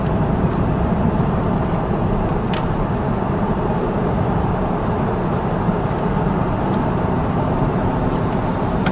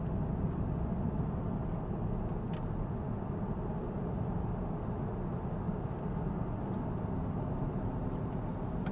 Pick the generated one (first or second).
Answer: first